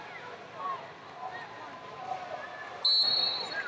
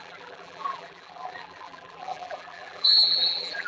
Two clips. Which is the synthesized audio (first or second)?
second